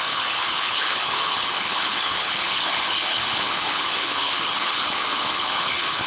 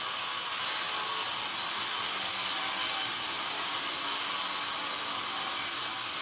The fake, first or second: first